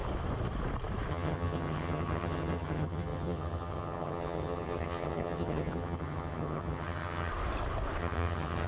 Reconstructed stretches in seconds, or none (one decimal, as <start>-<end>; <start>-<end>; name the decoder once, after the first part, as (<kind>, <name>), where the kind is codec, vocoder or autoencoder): 1.1-7.3 (vocoder, HiFi-GAN); 8.0-8.7

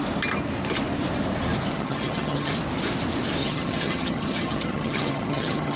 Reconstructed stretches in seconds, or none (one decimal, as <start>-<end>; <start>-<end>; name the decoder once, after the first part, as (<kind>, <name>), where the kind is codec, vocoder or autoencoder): 1.7-2.5 (vocoder, HiFi-GAN); 3.4-5.8

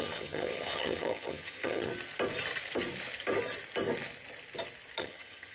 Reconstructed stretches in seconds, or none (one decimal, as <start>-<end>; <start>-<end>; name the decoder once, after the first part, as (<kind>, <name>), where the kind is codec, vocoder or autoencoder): 0.0-1.9 (vocoder, HiFi-GAN); 5.0-5.5

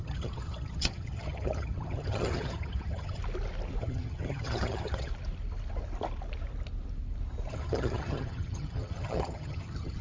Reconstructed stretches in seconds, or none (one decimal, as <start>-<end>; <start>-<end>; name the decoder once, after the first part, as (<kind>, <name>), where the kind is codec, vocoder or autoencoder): 0.0-3.2 (vocoder, HiFi-GAN); 3.8-5.1; 7.5-10.0

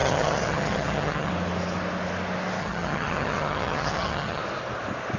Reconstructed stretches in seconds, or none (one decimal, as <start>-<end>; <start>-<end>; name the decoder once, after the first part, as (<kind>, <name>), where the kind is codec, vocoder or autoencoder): 0.0-1.3 (vocoder, HiFi-GAN); 2.6-4.4

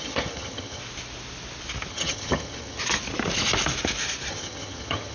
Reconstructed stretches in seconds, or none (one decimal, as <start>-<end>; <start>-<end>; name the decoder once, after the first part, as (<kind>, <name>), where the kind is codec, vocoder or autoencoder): 0.0-0.8 (vocoder, HiFi-GAN); 1.9-2.8; 4.3-5.1